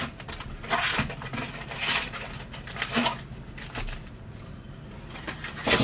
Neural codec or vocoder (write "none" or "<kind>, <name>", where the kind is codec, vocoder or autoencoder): none